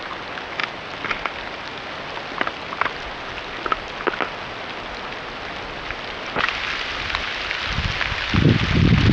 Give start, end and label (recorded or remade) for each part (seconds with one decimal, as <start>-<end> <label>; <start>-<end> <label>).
0.0-9.1 recorded